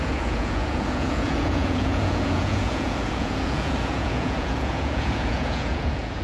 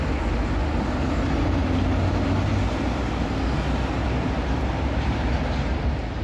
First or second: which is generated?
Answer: first